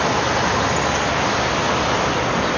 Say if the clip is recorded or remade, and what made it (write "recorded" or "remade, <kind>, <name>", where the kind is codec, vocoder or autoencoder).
recorded